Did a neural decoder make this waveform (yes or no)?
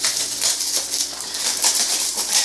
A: no